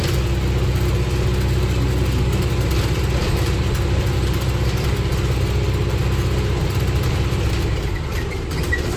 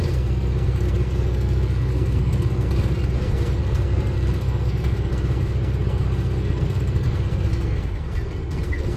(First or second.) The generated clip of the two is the second